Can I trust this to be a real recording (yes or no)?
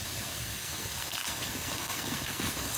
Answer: no